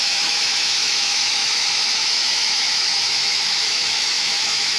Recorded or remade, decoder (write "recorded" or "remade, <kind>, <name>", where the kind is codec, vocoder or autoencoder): remade, autoencoder, DAC-VAE